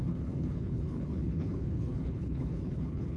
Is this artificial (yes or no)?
yes